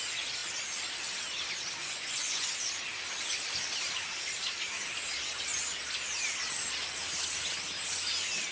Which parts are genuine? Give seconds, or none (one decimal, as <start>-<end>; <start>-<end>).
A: 0.0-1.8; 2.5-8.5